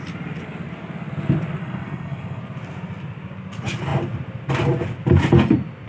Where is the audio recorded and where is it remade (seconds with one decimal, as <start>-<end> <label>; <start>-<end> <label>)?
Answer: 0.0-1.6 recorded; 1.6-2.4 remade; 2.4-5.9 recorded